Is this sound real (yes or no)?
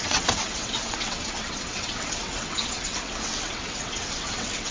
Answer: no